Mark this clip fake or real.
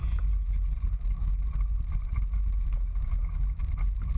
real